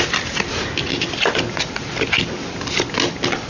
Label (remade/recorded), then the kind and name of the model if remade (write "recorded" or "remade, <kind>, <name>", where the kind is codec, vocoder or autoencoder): recorded